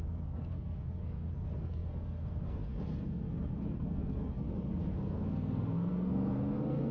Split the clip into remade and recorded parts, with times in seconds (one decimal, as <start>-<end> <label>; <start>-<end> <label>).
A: 0.0-6.9 remade